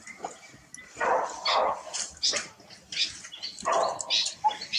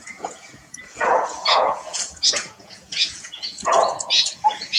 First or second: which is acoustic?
first